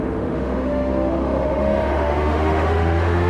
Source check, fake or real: fake